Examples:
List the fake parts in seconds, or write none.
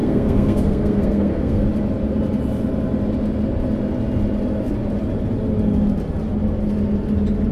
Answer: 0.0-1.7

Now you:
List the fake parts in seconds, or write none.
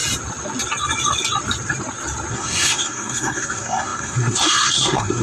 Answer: 2.3-5.2